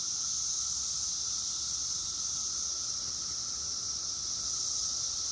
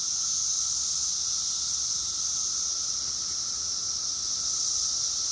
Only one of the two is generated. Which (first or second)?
first